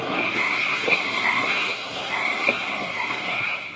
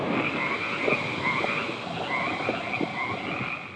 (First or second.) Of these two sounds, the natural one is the second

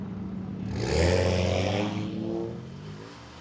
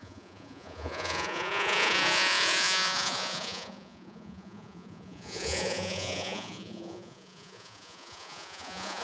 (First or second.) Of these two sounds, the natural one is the first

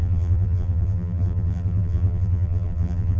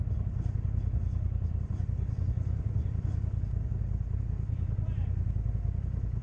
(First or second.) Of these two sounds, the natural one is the second